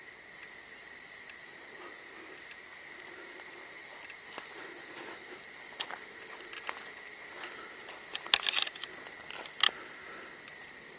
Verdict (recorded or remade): recorded